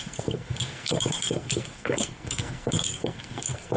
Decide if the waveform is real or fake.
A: fake